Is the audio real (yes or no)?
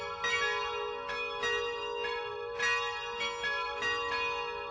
yes